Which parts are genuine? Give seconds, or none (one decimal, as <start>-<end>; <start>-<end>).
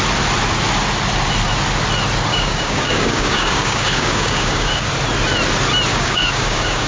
0.0-2.3; 4.9-5.9